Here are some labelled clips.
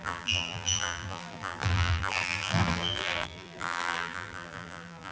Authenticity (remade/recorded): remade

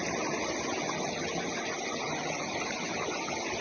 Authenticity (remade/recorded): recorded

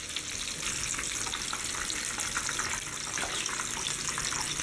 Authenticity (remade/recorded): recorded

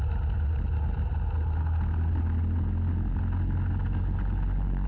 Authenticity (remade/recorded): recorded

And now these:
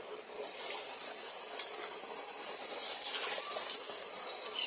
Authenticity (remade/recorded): recorded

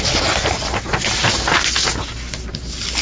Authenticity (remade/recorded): recorded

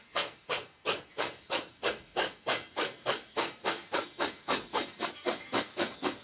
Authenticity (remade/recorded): remade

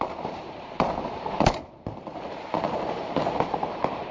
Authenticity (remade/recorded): remade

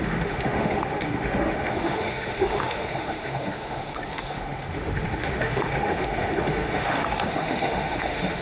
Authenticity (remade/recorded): remade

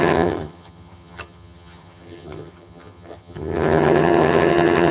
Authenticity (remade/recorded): remade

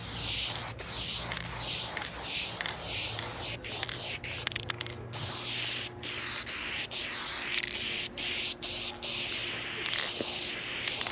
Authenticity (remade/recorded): recorded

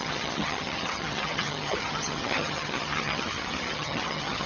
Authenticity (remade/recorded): remade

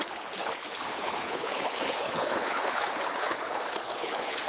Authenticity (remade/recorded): remade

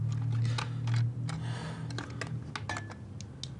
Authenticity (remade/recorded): recorded